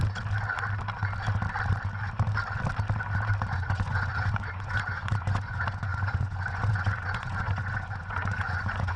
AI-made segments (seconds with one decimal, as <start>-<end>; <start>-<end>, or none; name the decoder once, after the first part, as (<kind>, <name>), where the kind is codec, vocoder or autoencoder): 3.5-9.0 (vocoder, Vocos)